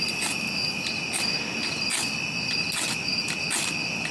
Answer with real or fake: real